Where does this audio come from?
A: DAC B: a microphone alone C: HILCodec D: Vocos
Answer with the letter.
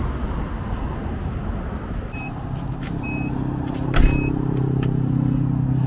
B